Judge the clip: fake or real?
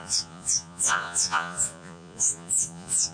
fake